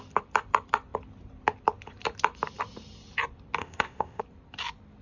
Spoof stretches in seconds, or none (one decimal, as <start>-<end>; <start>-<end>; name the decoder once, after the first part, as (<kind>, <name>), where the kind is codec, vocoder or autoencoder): 3.6-4.2 (codec, ZipCodec)